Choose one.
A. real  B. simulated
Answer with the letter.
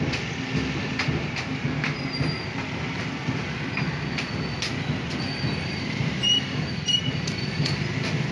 A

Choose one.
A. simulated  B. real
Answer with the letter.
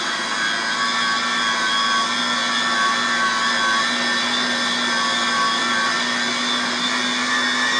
B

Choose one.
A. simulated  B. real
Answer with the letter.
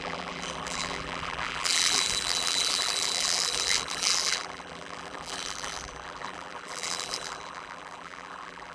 A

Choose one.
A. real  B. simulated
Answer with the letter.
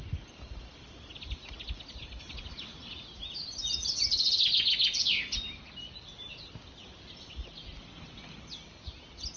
A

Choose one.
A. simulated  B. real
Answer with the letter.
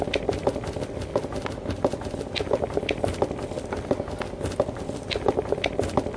B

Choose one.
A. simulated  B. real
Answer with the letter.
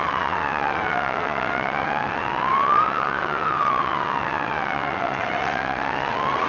A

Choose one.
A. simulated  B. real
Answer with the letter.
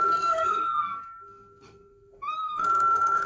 A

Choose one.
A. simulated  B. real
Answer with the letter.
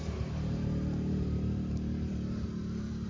A